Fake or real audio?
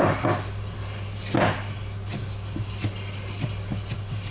real